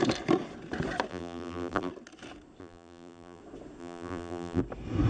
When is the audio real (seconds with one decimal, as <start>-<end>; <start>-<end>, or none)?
0.0-1.1; 1.9-2.6; 3.4-3.8; 4.6-5.1